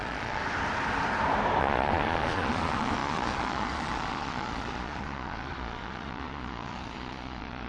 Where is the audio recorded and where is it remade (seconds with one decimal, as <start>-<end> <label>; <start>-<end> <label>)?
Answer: 0.0-0.4 remade; 0.4-1.6 recorded; 1.6-7.7 remade